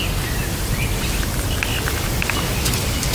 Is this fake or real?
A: real